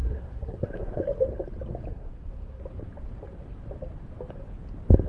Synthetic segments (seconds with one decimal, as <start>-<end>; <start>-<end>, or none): 0.0-1.0; 1.9-2.6